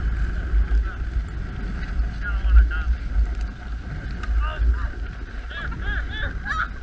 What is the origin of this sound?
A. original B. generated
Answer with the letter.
A